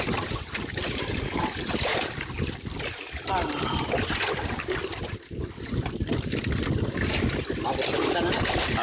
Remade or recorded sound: recorded